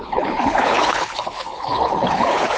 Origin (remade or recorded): remade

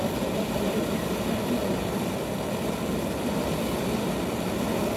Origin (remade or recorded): remade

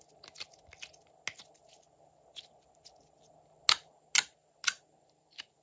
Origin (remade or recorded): recorded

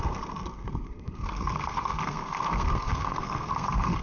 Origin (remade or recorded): remade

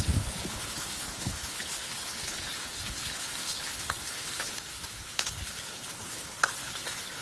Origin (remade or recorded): remade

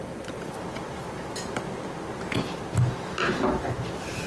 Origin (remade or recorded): recorded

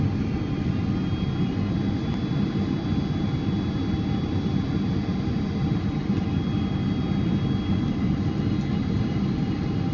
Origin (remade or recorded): recorded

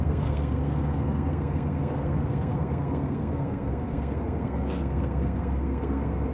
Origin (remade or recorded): remade